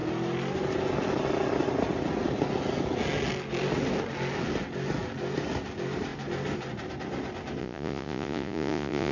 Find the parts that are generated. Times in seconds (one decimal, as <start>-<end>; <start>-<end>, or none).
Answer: 7.6-9.1

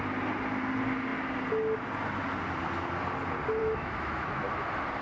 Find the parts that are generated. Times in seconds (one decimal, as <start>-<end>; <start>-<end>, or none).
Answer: 3.6-4.6

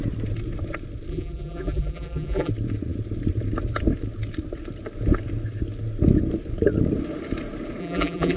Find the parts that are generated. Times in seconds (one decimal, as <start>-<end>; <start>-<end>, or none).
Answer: 1.1-2.5; 7.8-8.4

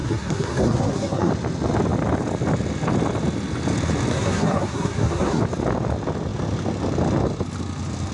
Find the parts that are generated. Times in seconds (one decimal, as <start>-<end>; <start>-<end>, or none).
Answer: 0.0-1.3; 4.1-5.4

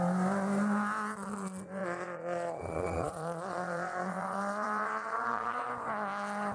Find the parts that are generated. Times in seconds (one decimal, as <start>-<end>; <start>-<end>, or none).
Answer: 1.8-5.7

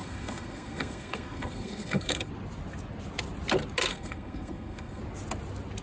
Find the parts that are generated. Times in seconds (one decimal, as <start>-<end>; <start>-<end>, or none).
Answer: 0.0-2.3; 3.9-5.0

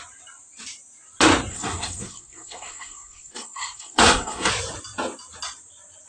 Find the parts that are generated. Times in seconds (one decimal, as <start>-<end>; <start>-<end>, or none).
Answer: 1.5-4.5

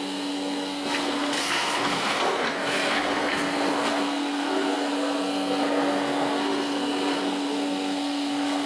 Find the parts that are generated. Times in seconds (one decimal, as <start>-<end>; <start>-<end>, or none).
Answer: 0.0-8.7